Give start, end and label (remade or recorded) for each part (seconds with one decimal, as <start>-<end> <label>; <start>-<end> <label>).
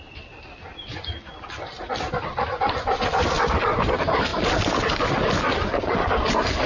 0.0-6.7 recorded